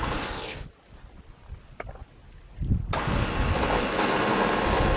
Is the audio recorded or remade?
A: recorded